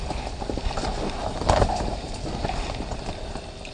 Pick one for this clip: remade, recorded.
recorded